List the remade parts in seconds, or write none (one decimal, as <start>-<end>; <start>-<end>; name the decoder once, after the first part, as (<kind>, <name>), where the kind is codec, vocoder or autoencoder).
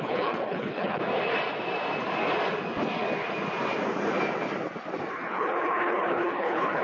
0.0-1.0 (codec, HILCodec); 5.1-6.8